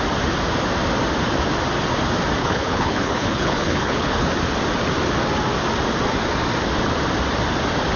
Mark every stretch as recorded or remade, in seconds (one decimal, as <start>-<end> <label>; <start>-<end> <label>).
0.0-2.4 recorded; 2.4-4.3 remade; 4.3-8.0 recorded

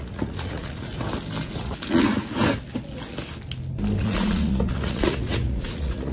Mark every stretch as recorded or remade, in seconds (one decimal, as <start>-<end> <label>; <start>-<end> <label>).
0.0-0.9 remade; 0.9-1.4 recorded; 1.4-2.4 remade; 2.4-4.0 recorded; 4.0-6.1 remade

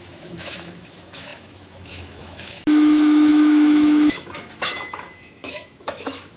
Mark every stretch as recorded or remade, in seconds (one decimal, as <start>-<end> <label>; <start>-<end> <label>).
0.0-6.4 remade